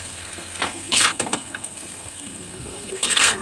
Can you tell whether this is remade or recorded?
remade